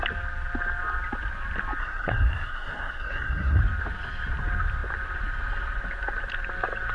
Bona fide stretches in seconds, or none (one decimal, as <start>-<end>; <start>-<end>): 0.0-1.8; 3.6-6.9